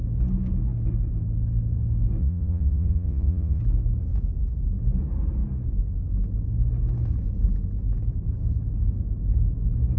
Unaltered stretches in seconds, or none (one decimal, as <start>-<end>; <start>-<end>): 0.0-2.2; 3.6-10.0